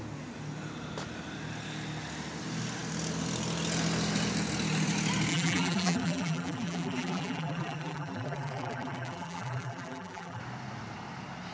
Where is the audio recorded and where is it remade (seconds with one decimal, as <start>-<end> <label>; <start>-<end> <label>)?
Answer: 0.0-5.3 recorded; 5.3-10.4 remade; 10.4-11.5 recorded